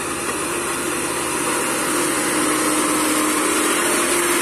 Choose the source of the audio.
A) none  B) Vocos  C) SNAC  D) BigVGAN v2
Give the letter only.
A